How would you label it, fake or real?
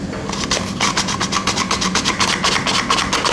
real